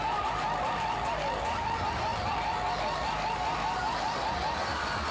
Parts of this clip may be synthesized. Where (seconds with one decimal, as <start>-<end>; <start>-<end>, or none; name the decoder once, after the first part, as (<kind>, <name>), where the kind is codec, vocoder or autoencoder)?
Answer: none